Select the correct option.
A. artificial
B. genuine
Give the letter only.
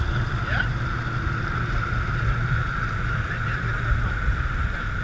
B